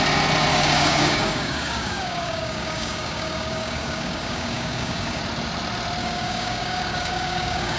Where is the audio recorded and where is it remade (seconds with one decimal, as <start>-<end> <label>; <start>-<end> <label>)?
0.0-0.5 recorded; 0.5-5.2 remade; 5.2-6.0 recorded; 6.0-7.8 remade